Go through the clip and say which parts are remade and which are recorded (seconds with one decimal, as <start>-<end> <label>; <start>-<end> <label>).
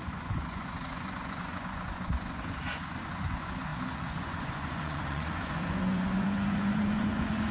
0.0-7.5 remade